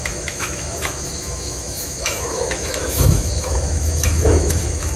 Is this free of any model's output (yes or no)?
no